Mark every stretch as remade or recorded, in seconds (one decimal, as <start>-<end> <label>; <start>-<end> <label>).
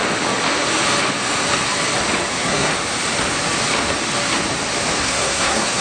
0.0-2.3 recorded; 2.3-2.7 remade; 2.7-5.0 recorded; 5.0-5.8 remade